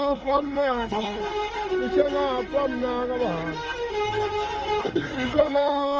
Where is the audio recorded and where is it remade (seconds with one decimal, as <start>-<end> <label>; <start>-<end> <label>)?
0.0-1.2 remade; 1.2-4.8 recorded; 4.8-6.0 remade